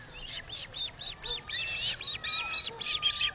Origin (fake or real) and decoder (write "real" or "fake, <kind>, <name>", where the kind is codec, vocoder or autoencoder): real